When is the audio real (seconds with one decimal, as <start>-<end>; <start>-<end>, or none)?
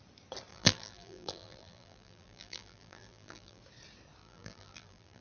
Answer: 0.0-0.5; 3.6-4.2